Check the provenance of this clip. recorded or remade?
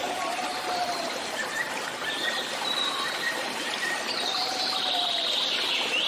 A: remade